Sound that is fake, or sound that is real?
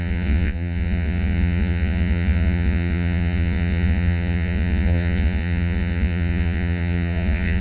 fake